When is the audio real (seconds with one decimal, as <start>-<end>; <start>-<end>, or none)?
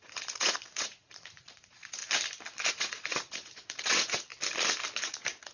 2.0-2.7; 4.3-5.0